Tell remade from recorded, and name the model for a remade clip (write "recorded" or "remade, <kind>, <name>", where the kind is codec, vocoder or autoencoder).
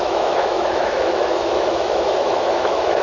remade, autoencoder, DAC-VAE